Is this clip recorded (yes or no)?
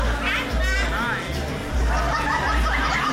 yes